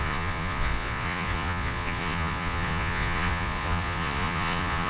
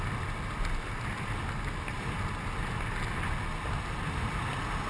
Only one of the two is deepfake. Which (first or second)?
first